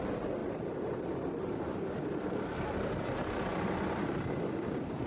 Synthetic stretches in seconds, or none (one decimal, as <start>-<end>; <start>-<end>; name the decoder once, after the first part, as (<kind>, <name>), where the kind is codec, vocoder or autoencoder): none